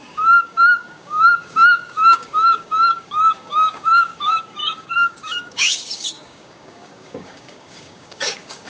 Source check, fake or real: fake